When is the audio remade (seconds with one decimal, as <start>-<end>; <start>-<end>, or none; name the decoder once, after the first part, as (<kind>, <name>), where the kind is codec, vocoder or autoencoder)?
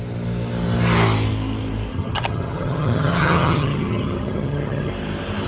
1.9-4.9 (vocoder, HiFi-GAN)